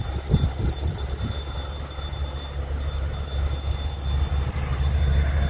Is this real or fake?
real